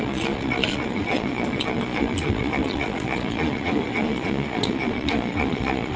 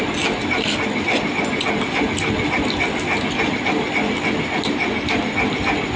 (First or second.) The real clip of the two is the second